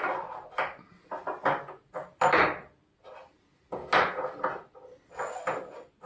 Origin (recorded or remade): recorded